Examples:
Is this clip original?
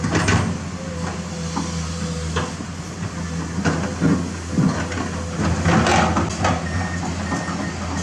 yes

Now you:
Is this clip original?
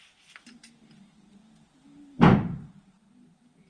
yes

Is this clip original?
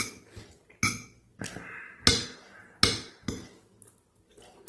yes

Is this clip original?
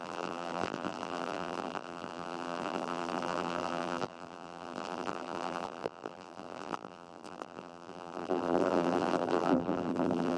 no